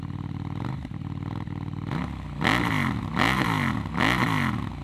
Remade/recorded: recorded